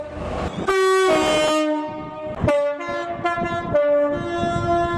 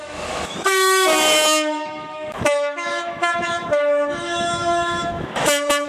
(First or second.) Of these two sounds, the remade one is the second